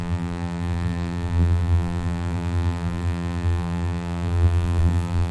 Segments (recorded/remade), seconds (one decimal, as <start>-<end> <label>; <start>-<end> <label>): 0.0-5.3 remade